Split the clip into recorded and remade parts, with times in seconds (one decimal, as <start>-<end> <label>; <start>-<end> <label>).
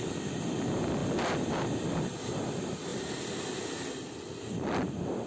0.0-5.3 recorded